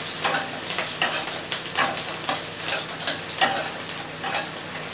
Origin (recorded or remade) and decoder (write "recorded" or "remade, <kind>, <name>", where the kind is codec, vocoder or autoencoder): recorded